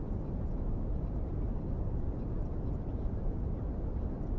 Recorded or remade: recorded